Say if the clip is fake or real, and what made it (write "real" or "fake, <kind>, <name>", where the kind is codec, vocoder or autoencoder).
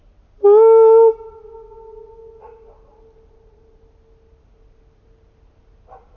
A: real